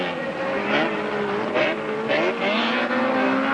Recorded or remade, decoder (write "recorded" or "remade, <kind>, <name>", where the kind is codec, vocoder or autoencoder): recorded